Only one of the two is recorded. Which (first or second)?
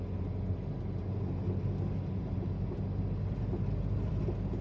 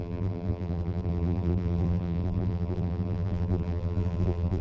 first